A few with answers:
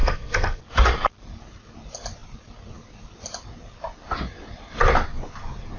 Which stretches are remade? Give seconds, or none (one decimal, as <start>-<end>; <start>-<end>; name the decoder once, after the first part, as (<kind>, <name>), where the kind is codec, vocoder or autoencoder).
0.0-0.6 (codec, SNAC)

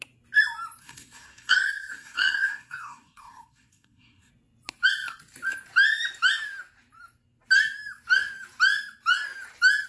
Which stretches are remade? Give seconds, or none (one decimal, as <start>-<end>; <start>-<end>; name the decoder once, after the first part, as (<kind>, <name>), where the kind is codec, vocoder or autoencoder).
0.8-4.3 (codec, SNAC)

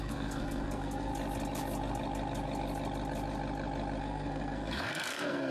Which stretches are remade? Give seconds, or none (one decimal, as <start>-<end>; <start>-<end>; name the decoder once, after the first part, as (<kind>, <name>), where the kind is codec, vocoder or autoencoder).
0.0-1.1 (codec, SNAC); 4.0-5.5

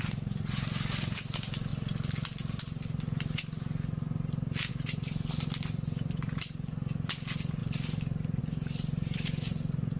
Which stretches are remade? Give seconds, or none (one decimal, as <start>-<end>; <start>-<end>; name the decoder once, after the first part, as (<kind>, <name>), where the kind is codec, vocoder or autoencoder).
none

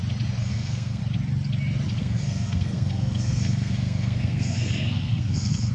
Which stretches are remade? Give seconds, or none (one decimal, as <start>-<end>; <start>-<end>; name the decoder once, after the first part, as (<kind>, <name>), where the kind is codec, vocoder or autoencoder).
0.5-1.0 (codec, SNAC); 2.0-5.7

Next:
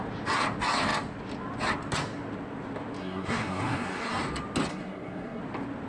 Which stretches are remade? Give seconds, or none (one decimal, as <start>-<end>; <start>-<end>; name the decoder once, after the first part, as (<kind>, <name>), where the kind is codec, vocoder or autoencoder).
3.0-4.2 (codec, SNAC); 4.7-5.4

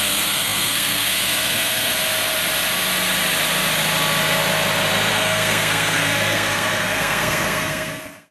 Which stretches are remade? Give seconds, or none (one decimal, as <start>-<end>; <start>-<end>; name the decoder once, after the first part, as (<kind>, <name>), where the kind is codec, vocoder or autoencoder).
0.0-1.9 (codec, SNAC); 5.1-8.3

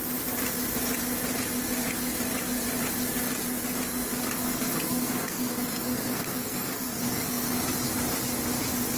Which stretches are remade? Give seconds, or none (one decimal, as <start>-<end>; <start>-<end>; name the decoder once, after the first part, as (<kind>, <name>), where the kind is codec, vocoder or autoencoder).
4.4-7.6 (codec, SNAC)